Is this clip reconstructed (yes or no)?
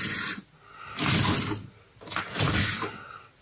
no